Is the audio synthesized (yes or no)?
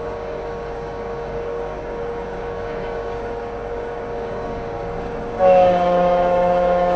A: yes